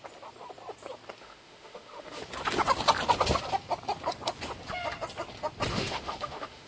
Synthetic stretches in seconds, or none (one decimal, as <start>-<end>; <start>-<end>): 1.2-2.2; 5.7-6.7